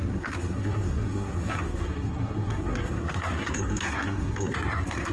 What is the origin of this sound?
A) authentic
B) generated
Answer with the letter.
B